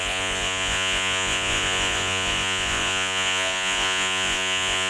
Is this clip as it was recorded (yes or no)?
no